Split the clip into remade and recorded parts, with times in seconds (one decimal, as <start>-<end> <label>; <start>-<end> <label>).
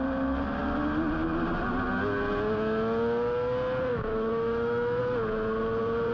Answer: 0.0-3.9 recorded; 3.9-5.0 remade; 5.0-6.1 recorded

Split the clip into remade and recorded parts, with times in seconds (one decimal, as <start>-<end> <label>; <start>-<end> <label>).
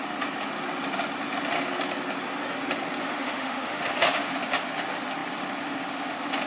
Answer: 0.0-3.0 recorded; 3.0-4.3 remade; 4.3-6.5 recorded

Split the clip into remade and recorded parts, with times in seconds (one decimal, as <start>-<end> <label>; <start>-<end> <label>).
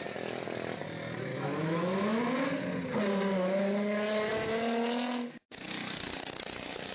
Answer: 0.0-1.3 recorded; 1.3-2.2 remade; 2.2-6.9 recorded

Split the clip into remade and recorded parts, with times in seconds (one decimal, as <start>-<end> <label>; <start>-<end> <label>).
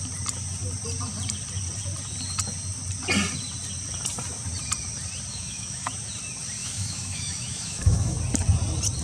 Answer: 0.0-5.3 recorded; 5.3-5.9 remade; 5.9-6.6 recorded; 6.6-8.2 remade; 8.2-9.0 recorded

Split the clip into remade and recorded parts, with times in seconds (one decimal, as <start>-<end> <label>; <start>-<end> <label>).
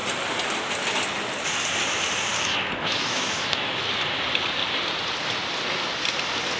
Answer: 0.0-2.5 recorded; 2.5-3.8 remade; 3.8-6.6 recorded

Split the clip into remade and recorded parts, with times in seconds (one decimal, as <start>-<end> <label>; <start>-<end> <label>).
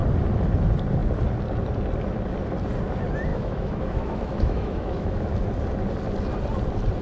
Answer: 0.0-3.3 recorded; 3.3-5.3 remade; 5.3-7.0 recorded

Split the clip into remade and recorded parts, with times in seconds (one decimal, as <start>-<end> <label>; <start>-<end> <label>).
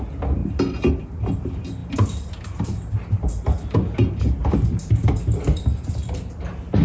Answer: 0.0-6.8 recorded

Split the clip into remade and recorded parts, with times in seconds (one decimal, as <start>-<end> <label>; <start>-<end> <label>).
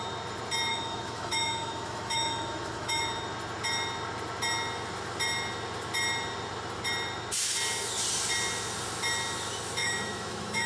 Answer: 0.0-0.7 recorded; 0.7-3.0 remade; 3.0-9.8 recorded; 9.8-10.7 remade